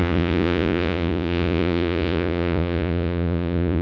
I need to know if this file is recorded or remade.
remade